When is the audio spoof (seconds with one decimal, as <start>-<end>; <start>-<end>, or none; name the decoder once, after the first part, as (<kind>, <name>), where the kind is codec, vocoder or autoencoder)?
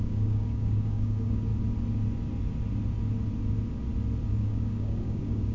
0.0-1.5 (codec, DAC); 4.3-5.5